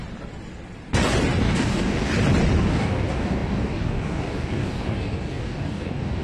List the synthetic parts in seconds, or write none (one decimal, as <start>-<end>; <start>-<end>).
1.4-2.1; 2.6-6.2